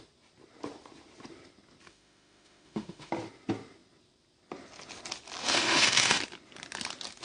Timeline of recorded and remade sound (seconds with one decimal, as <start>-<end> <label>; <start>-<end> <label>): 0.0-1.9 recorded; 1.9-3.1 remade; 3.1-5.4 recorded; 5.4-6.2 remade; 6.2-7.2 recorded